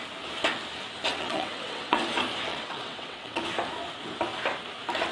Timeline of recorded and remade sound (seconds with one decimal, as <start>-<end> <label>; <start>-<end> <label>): 0.0-1.1 recorded; 1.1-2.0 remade; 2.0-2.5 recorded; 2.5-3.4 remade; 3.4-5.1 recorded